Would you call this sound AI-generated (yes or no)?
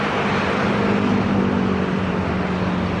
no